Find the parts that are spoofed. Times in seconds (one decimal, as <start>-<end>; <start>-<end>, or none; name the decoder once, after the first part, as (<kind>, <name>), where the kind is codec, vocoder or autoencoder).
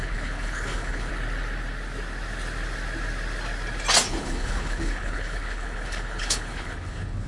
0.0-1.1 (codec, HILCodec); 4.1-7.3